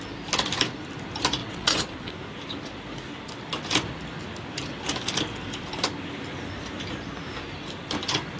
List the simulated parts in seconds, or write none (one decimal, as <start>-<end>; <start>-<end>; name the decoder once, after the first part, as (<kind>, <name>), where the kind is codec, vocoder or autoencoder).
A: 1.4-2.1 (vocoder, WaveNeXt)